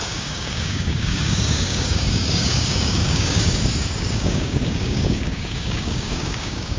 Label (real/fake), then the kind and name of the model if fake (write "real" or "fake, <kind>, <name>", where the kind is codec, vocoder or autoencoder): fake, codec, DAC